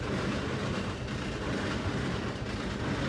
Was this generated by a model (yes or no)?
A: no